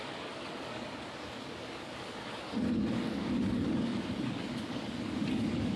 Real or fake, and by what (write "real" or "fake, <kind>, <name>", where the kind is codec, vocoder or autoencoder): fake, codec, DAC